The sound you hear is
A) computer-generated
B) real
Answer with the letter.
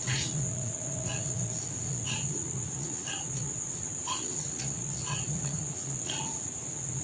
A